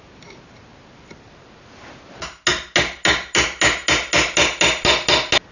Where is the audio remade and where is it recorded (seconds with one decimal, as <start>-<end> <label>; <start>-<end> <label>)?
0.0-5.5 recorded